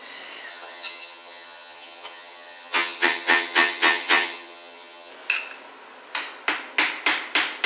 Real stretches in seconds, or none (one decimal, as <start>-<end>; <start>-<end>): 0.0-0.5; 5.1-7.7